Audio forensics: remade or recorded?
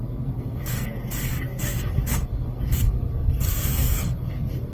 remade